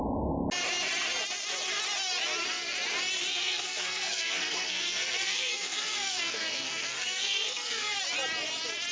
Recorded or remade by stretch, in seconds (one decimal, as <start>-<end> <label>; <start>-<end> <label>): 0.0-3.3 recorded; 3.3-8.0 remade; 8.0-8.9 recorded